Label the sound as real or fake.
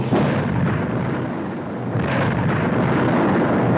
real